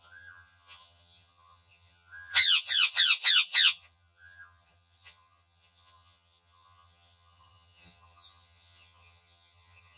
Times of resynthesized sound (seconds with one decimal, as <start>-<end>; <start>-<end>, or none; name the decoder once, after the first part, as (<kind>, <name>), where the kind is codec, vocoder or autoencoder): 0.0-10.0 (vocoder, HiFi-GAN)

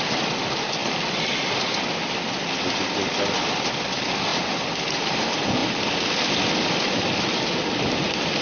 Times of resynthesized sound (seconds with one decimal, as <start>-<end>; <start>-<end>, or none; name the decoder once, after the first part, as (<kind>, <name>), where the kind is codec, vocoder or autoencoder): 0.0-0.8 (vocoder, BigVGAN v2); 2.5-8.4

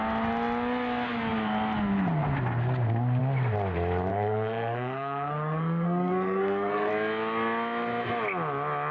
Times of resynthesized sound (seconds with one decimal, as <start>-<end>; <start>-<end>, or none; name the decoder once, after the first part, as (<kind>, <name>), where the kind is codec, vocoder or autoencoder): 4.1-6.9 (codec, SNAC)

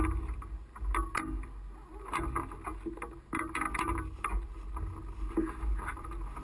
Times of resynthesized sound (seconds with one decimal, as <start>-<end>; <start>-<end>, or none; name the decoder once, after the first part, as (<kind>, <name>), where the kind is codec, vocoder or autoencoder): none